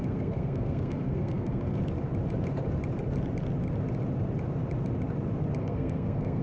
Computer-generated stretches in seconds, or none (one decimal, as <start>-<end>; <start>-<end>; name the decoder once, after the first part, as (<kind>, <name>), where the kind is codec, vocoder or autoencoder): 0.0-1.8 (codec, SNAC); 5.6-6.4